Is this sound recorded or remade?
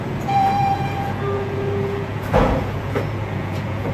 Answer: remade